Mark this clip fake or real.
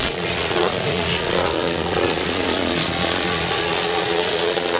fake